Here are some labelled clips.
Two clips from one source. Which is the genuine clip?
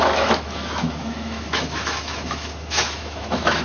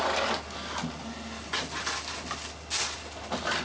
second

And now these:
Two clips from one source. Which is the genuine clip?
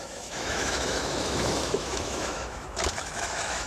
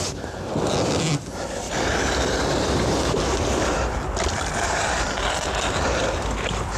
second